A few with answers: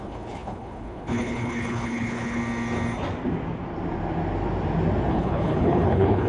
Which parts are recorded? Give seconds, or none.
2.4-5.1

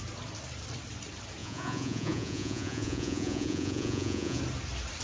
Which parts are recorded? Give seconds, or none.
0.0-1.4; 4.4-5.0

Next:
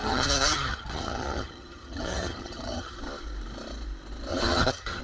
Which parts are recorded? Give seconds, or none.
3.0-4.3

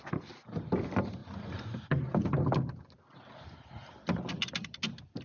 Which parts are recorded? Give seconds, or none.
0.0-5.2

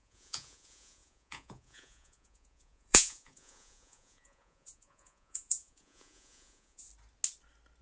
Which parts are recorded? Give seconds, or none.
6.9-7.8

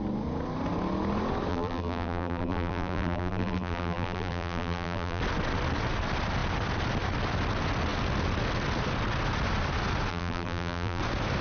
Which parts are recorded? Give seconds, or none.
0.0-1.5; 5.2-10.1; 11.0-11.4